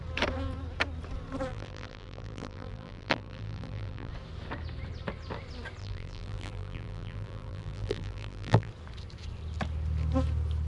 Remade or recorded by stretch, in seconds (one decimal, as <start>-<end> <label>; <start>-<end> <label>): 0.0-1.5 recorded; 1.5-4.1 remade; 4.1-5.8 recorded; 5.8-8.7 remade; 8.7-10.7 recorded